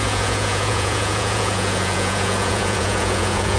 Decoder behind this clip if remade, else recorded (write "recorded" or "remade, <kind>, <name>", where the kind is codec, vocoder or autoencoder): remade, vocoder, Vocos